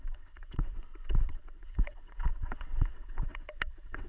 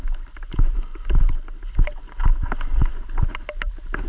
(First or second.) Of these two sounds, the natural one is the second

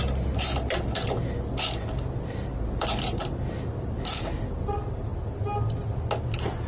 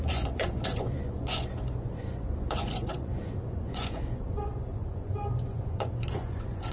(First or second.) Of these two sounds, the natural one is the first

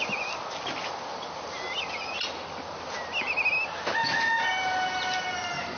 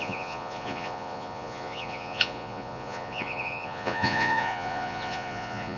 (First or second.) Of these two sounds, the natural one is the first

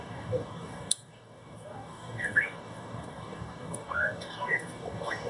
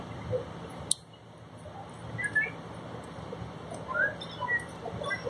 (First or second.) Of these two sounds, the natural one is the second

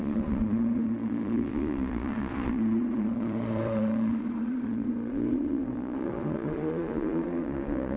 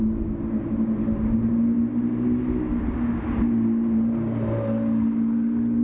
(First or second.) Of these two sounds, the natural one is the second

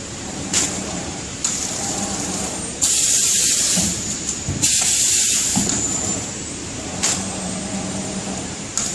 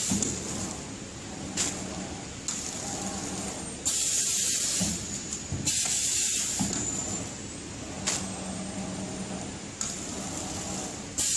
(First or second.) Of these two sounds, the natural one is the second